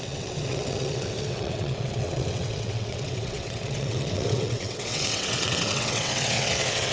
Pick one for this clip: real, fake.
fake